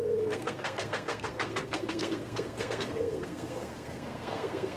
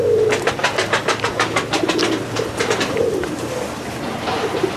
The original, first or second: second